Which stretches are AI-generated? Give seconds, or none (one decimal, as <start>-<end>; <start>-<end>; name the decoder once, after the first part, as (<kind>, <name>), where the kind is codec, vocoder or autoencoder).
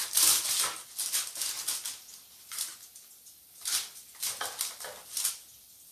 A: none